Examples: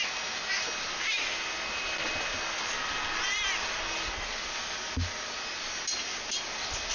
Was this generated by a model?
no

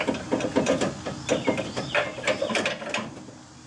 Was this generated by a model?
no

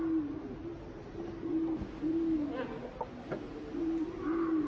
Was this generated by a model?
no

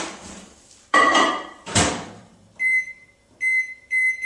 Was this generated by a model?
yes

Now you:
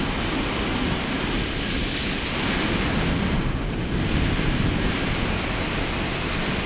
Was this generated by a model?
no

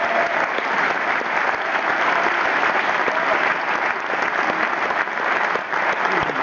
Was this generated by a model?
no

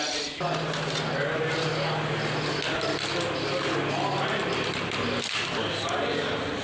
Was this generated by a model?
no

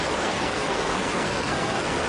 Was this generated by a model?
yes